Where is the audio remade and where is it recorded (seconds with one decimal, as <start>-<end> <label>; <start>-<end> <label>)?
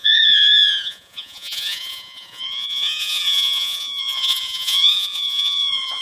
0.0-6.0 remade